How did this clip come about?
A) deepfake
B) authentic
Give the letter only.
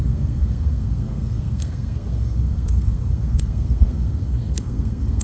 A